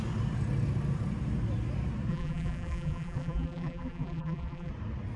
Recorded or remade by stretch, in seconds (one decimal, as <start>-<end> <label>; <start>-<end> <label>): 0.0-2.1 recorded; 2.1-4.7 remade; 4.7-5.2 recorded